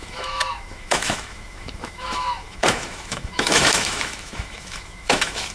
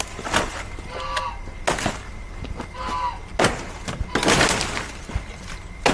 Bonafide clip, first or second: second